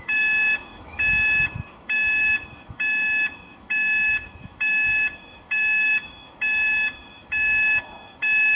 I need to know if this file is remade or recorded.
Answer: remade